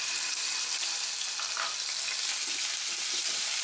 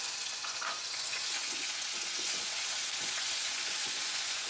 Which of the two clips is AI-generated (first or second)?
second